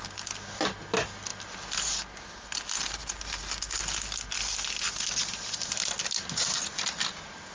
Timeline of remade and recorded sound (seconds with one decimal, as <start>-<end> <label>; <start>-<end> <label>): 0.0-7.5 recorded